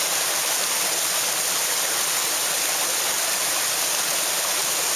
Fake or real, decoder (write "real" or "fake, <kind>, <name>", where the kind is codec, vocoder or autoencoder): real